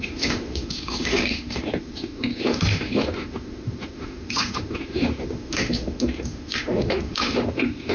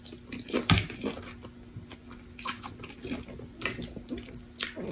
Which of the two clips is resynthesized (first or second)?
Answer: first